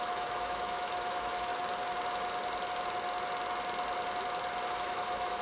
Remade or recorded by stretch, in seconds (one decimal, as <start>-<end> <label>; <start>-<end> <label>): 0.0-1.5 remade; 1.5-4.7 recorded; 4.7-5.4 remade